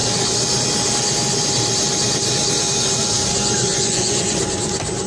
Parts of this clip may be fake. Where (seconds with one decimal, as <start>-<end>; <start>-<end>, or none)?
3.7-4.4